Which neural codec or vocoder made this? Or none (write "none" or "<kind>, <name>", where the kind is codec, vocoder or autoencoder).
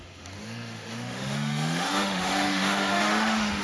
autoencoder, DAC-VAE